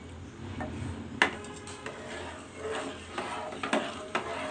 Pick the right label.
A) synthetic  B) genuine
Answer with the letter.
B